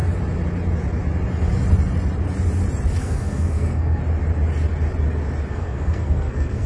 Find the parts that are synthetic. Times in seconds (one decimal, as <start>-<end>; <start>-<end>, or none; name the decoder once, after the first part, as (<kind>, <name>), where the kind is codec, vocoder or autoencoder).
3.0-4.0 (codec, SNAC); 5.5-6.7